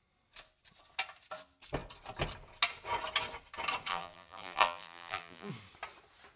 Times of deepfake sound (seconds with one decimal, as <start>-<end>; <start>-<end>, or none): 3.9-5.5